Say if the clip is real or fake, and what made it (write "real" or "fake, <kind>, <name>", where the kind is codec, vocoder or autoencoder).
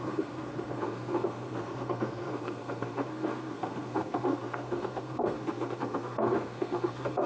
fake, codec, SNAC